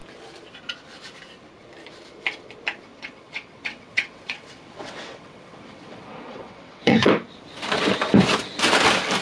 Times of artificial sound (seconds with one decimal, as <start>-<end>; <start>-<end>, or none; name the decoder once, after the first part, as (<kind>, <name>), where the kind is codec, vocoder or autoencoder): 2.9-7.1 (vocoder, WaveNeXt)